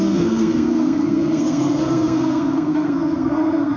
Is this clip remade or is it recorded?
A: remade